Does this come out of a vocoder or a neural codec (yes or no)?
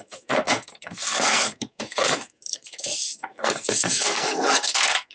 yes